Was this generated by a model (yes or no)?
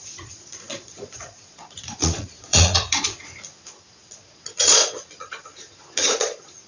yes